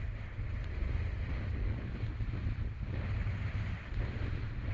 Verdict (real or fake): real